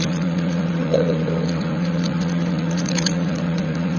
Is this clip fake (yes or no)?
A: yes